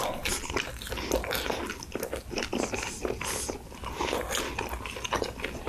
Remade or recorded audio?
recorded